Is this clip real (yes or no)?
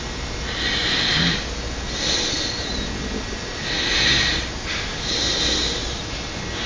yes